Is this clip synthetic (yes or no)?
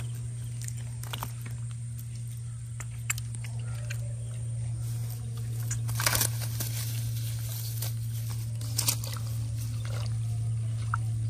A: no